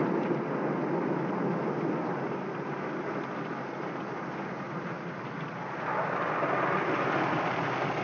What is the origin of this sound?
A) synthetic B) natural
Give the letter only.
B